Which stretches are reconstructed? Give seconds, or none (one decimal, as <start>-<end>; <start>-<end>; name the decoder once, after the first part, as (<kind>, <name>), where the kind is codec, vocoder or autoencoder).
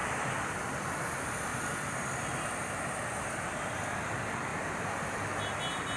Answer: 1.5-3.7 (vocoder, BigVGAN v2); 4.5-5.2